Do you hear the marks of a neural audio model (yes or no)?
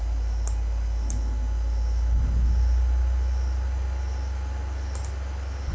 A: no